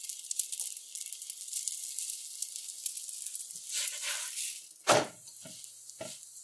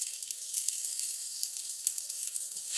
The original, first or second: first